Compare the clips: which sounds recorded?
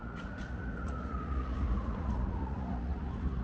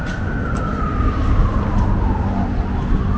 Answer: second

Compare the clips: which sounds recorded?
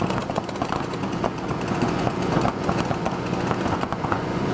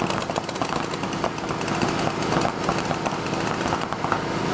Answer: second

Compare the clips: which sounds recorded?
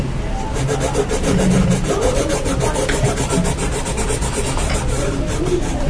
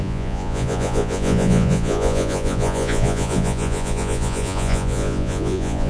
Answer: first